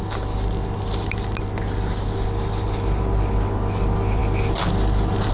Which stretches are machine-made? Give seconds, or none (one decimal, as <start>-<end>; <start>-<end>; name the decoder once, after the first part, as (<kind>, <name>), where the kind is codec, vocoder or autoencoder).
none